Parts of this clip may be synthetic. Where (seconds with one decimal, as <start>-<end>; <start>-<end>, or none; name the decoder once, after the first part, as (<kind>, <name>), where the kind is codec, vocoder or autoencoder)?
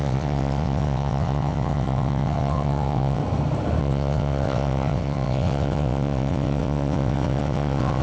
0.0-3.2 (vocoder, WaveNeXt); 3.8-8.0